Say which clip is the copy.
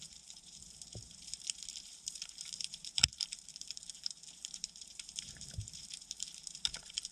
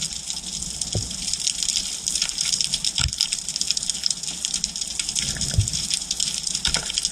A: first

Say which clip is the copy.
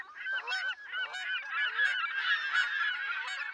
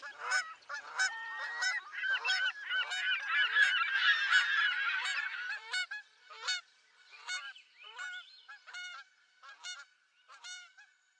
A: second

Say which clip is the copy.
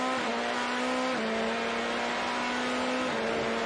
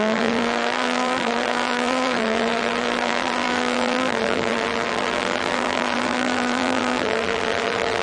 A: second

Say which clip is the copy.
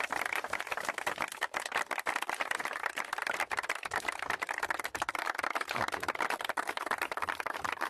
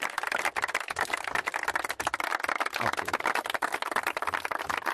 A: first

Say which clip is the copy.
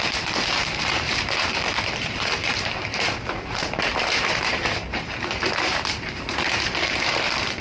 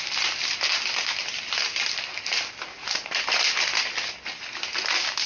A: first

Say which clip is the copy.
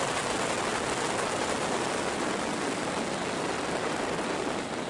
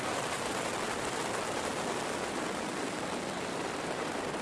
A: second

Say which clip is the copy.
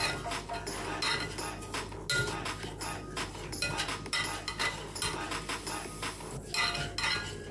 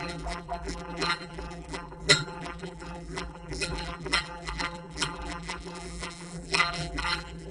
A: second